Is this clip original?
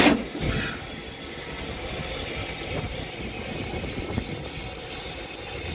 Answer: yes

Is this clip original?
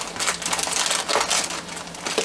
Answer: yes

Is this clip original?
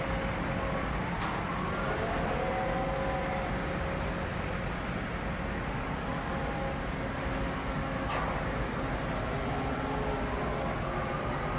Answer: yes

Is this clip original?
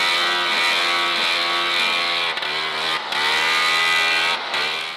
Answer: yes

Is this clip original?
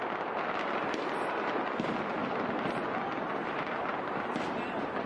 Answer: yes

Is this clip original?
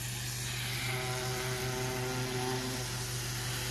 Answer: yes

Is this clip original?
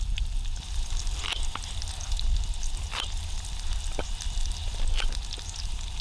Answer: yes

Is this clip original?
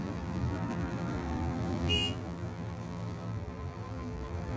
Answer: no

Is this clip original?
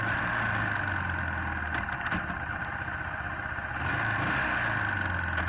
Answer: yes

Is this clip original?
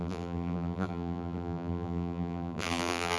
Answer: no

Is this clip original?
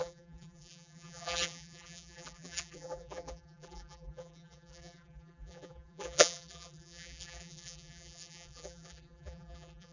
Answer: no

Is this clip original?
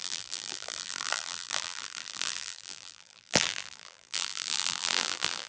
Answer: no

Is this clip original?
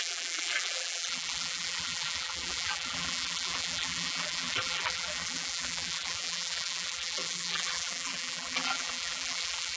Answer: no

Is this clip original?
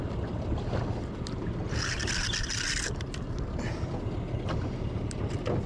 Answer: yes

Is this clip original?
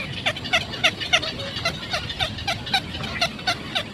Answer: yes